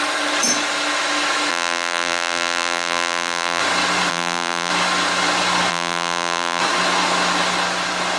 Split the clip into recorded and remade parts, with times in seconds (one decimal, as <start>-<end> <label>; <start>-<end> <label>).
0.0-1.5 recorded; 1.5-3.6 remade; 3.6-4.1 recorded; 4.1-4.7 remade; 4.7-5.7 recorded; 5.7-6.6 remade; 6.6-8.2 recorded